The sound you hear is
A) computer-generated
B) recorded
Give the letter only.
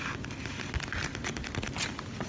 B